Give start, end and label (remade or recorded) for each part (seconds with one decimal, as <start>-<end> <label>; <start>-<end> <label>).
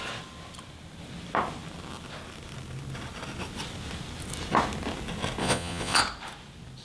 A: 0.0-5.4 recorded; 5.4-6.0 remade; 6.0-6.8 recorded